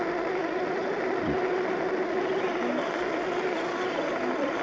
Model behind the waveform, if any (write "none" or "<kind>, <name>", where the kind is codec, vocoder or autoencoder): none